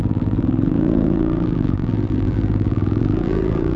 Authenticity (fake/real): fake